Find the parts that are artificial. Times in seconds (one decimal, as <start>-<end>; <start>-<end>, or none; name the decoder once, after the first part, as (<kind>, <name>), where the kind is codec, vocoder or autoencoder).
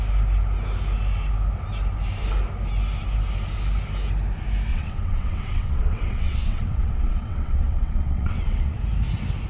4.7-8.8 (vocoder, WaveNeXt)